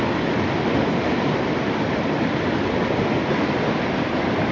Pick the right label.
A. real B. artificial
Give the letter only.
A